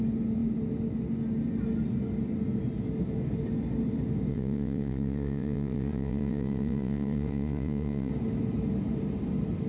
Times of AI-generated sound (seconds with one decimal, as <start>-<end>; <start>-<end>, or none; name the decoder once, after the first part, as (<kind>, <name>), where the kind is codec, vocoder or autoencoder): 4.3-8.1 (vocoder, WaveNeXt)